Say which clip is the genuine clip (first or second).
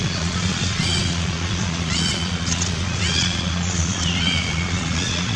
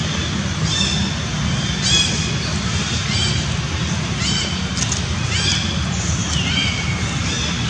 second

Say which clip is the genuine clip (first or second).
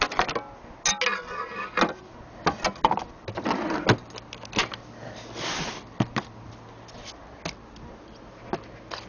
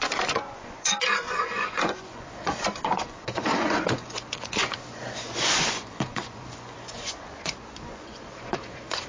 first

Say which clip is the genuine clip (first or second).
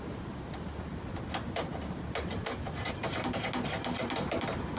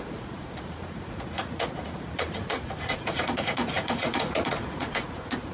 first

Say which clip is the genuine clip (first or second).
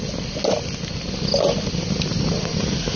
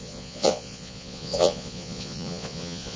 first